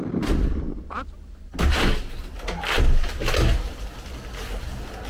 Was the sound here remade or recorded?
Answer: recorded